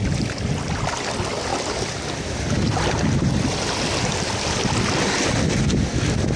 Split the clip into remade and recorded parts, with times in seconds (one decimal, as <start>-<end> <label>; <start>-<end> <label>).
0.0-6.4 recorded